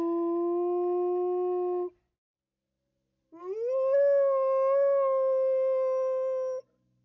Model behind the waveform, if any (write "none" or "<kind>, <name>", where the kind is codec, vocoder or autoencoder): none